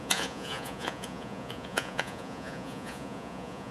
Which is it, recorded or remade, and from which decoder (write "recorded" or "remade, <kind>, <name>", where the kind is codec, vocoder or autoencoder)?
remade, vocoder, Vocos